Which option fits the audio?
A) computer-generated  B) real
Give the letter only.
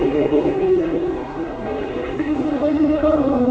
A